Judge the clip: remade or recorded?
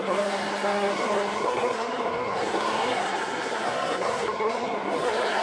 remade